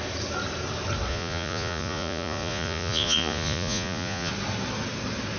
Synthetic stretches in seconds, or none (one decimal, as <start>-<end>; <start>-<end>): 1.1-4.3